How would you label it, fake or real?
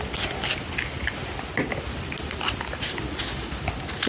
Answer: real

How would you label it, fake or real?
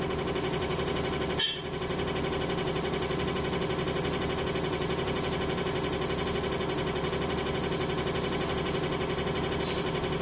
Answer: real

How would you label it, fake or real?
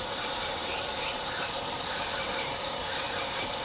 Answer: fake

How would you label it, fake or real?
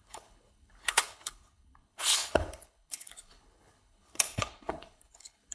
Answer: fake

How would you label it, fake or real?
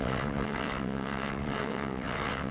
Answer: fake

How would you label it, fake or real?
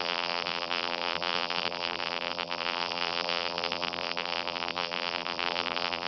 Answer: fake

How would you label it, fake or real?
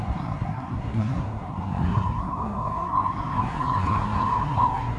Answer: fake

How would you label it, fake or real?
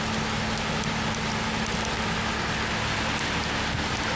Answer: real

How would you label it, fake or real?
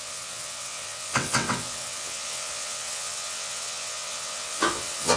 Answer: fake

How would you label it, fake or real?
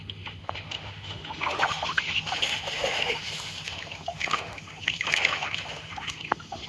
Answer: fake